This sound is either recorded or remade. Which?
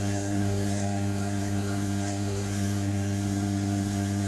remade